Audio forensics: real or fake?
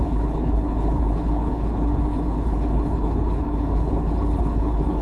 fake